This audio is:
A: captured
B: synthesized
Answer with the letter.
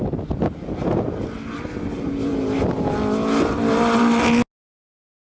A